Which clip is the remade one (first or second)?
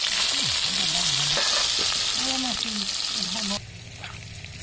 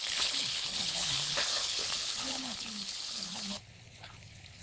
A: second